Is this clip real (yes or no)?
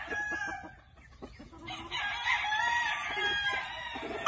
yes